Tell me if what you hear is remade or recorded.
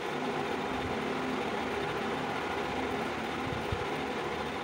recorded